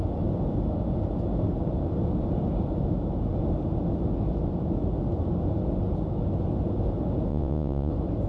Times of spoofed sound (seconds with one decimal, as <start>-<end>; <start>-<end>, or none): 7.3-7.9